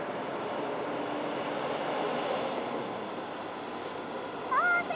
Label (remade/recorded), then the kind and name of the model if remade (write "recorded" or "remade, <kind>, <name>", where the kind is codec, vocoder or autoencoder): recorded